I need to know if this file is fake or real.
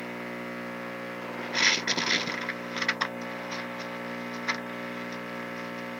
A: real